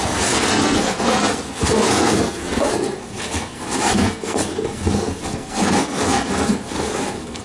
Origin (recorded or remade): remade